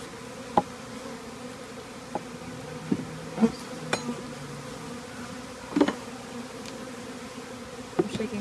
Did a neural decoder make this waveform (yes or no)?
no